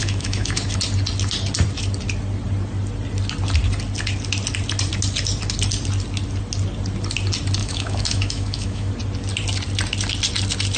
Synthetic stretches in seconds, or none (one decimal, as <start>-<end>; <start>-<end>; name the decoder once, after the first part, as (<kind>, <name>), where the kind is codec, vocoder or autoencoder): 0.0-0.8 (autoencoder, DAC-VAE); 7.6-8.9